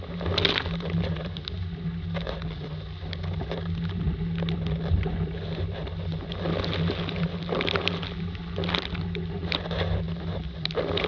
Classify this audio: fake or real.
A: real